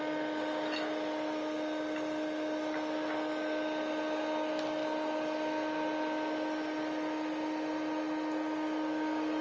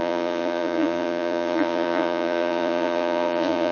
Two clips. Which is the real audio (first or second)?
first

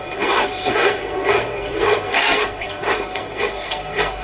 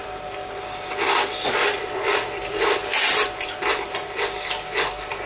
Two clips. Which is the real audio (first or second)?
second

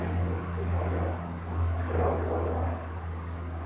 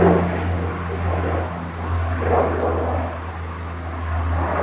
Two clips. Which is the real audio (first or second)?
second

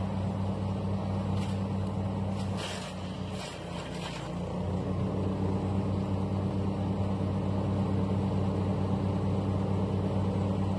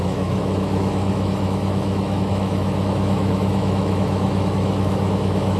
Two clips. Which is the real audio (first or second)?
first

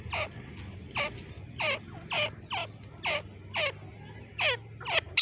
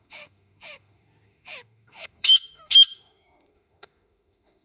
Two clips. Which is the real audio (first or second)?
first